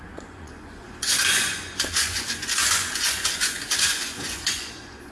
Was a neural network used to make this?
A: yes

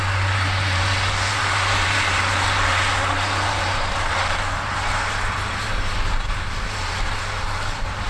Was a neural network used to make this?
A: yes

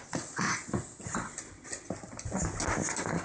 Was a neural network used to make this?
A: no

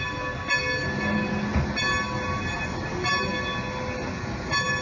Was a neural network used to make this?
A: no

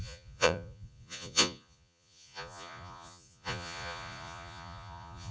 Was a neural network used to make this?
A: yes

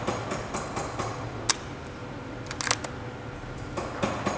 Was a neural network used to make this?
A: no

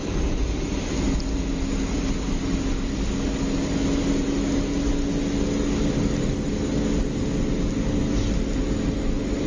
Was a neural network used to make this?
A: no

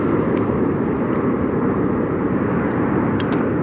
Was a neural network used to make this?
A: no